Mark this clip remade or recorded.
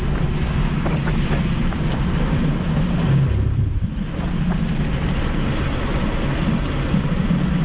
recorded